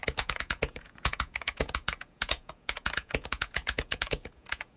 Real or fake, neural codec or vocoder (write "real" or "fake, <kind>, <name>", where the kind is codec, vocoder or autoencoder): fake, vocoder, Vocos